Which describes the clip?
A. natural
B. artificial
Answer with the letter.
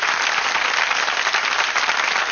B